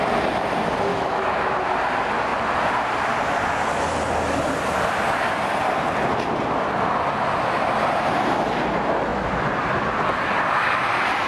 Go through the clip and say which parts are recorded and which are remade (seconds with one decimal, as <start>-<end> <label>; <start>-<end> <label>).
0.0-0.9 recorded; 0.9-1.5 remade; 1.5-11.3 recorded